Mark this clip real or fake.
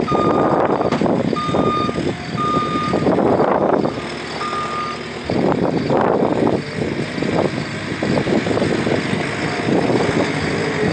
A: real